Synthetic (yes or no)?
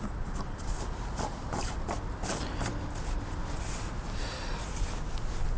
no